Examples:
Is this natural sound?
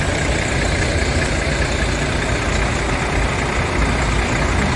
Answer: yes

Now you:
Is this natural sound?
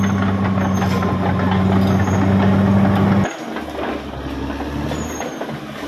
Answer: yes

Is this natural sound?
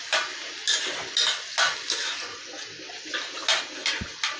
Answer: yes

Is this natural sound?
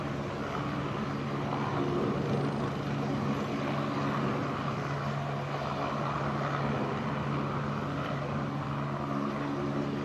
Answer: yes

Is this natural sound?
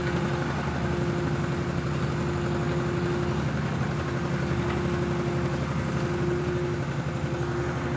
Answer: yes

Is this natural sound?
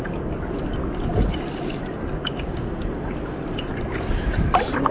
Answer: yes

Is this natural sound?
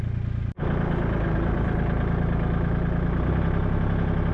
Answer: yes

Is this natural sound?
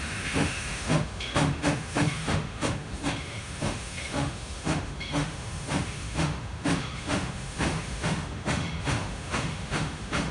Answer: no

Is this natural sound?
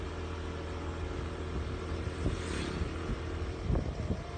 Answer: yes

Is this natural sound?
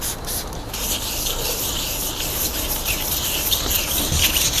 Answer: yes